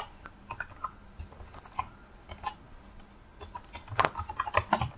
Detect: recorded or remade recorded